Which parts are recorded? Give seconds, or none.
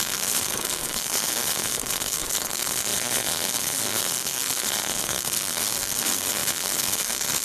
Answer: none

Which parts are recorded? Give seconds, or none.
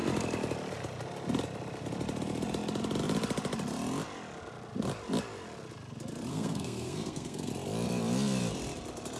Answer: 0.0-6.3; 7.5-9.2